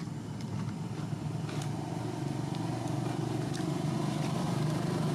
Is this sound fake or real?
real